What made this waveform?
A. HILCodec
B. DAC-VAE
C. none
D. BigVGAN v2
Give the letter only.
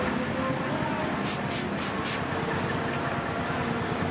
C